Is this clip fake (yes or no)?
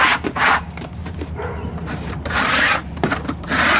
yes